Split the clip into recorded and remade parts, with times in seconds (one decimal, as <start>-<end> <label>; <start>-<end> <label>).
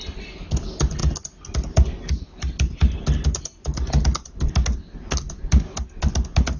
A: 0.0-6.6 recorded